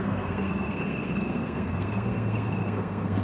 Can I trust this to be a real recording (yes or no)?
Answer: no